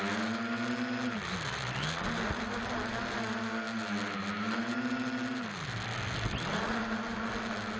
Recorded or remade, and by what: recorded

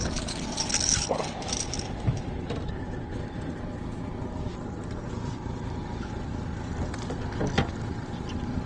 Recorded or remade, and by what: recorded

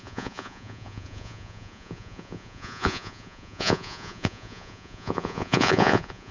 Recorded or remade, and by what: remade, vocoder, Vocos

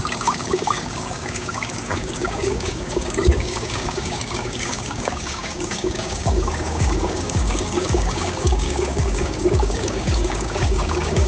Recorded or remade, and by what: remade, codec, DAC